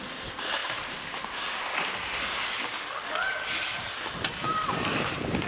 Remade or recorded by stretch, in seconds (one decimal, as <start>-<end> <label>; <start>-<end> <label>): 0.0-4.5 recorded; 4.5-5.1 remade; 5.1-5.5 recorded